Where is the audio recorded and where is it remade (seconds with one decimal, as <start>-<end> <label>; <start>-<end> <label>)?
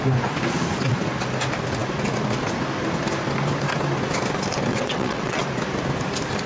0.0-4.7 recorded; 4.7-5.4 remade; 5.4-6.5 recorded